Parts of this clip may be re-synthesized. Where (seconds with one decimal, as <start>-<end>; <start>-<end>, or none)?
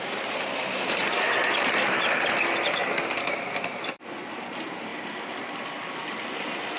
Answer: 0.0-1.0; 1.8-6.8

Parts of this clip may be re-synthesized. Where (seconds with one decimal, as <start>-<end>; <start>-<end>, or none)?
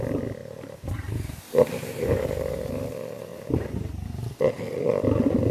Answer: 0.4-2.2; 3.3-4.6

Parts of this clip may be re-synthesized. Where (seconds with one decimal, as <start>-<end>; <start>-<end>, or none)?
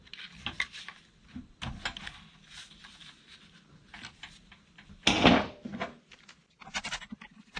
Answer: none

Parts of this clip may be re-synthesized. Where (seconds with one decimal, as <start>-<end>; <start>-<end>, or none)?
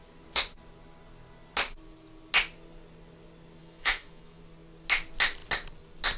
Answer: 3.6-4.4